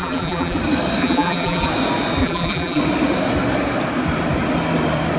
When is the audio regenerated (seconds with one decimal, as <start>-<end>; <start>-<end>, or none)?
0.0-0.6; 1.0-1.7; 2.2-2.8